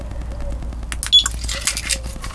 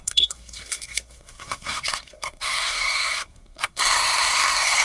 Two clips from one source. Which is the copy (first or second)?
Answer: second